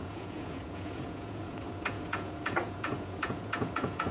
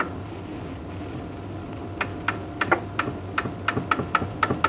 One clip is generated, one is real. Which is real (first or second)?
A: second